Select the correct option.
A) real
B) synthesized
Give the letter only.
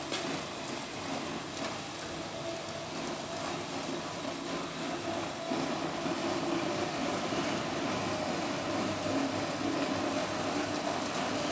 A